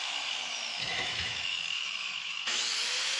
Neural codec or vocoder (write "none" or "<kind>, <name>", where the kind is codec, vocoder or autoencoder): autoencoder, DAC-VAE